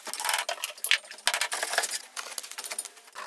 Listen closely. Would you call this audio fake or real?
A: real